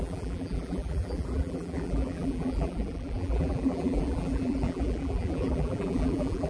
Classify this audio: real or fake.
fake